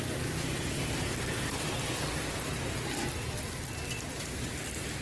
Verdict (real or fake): real